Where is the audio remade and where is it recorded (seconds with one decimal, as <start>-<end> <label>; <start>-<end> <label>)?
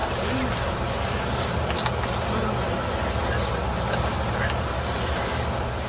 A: 0.0-5.9 recorded